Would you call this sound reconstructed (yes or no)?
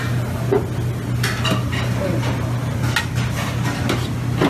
no